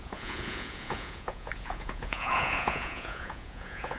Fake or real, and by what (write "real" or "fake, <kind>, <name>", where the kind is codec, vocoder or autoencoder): fake, vocoder, Vocos